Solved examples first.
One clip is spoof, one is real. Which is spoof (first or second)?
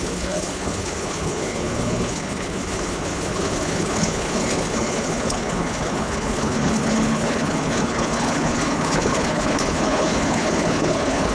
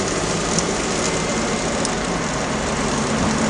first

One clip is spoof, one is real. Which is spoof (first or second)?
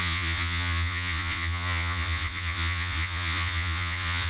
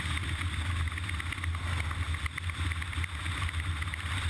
first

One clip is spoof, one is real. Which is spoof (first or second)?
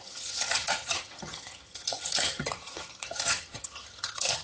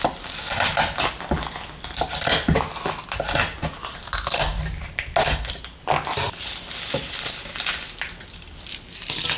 first